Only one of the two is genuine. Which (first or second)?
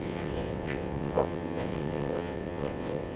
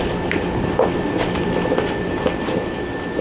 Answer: second